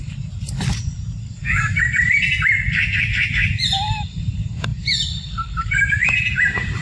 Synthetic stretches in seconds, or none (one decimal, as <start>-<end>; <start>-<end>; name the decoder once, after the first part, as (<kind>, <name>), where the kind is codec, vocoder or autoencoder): 0.0-6.8 (vocoder, BigVGAN v2)